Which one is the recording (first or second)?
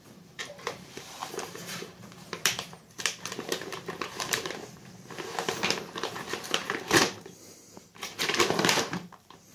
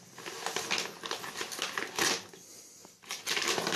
second